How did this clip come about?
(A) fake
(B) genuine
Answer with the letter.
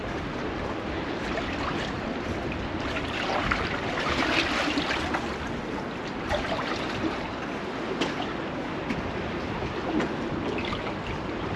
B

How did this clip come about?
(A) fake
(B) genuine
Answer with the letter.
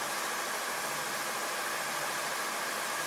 B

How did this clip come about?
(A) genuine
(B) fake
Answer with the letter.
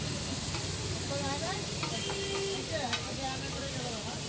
A